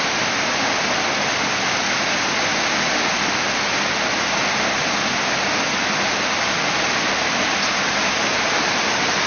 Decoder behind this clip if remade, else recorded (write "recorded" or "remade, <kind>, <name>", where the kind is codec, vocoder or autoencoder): recorded